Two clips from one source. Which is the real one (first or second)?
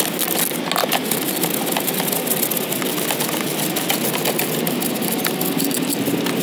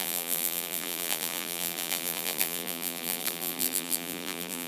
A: first